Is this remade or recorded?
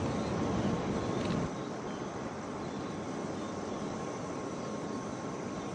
recorded